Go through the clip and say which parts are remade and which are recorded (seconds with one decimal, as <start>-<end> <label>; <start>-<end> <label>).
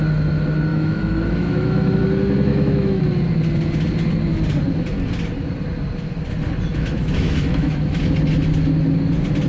0.0-0.7 recorded; 0.7-2.0 remade; 2.0-2.5 recorded; 2.5-3.0 remade; 3.0-6.7 recorded; 6.7-8.0 remade; 8.0-9.5 recorded